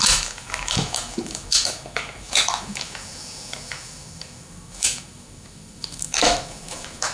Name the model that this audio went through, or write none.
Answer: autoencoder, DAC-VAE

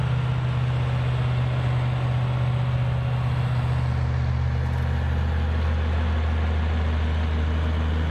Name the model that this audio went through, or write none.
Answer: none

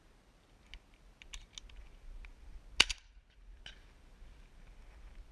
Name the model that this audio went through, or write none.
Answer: none